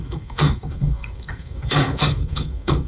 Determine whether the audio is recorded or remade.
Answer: remade